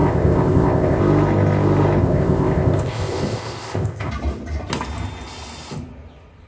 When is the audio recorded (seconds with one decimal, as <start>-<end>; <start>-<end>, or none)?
1.0-2.0; 4.1-6.5

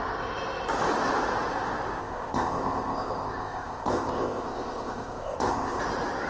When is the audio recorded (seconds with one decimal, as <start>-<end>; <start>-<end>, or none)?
0.0-2.0; 5.8-6.3

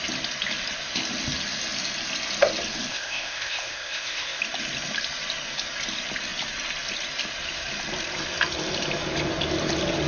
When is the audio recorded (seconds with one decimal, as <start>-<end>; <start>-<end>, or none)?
0.0-2.9; 4.4-10.1

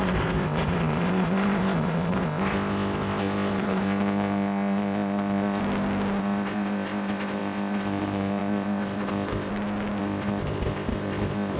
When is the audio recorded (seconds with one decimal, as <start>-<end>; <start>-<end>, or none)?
5.6-6.2; 9.5-10.0

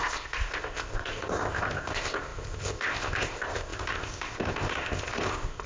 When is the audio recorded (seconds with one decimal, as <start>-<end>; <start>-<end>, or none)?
none

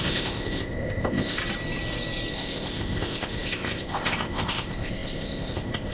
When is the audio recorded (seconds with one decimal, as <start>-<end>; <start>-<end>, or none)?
1.4-2.3